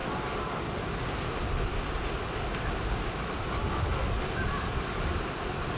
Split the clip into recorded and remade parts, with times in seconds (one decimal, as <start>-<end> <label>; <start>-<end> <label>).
0.0-5.8 recorded